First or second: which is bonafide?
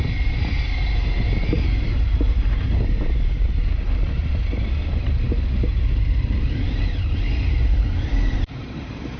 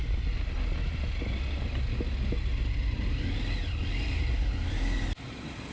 second